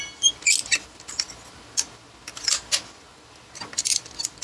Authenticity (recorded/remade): recorded